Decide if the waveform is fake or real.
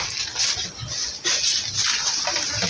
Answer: real